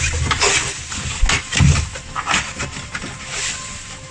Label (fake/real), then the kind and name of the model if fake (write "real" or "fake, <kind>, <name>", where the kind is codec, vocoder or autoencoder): real